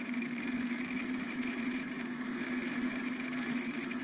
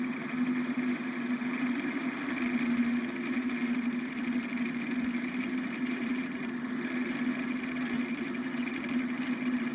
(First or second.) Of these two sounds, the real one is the second